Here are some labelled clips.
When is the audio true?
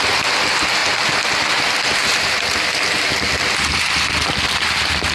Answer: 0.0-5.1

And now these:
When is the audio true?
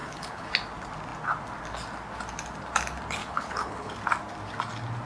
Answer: 0.5-3.2; 3.9-5.1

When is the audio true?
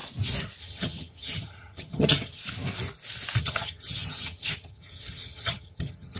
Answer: 0.0-0.6; 2.4-3.4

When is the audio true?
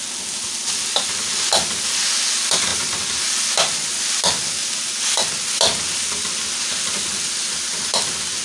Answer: 0.0-8.4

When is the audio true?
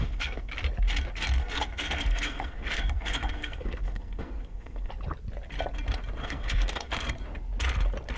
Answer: 0.5-1.4; 4.9-6.2; 6.9-8.2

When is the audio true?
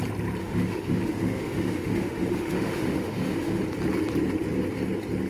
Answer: 0.0-0.4; 3.6-5.3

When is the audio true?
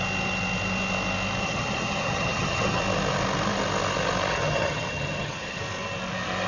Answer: 0.0-1.4; 2.8-4.3; 5.6-6.5